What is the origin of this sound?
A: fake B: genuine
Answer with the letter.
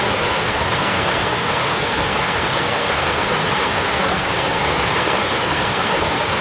A